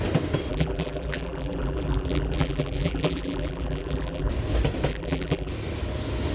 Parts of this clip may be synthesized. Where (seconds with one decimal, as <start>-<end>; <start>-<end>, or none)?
0.5-4.3; 4.9-5.5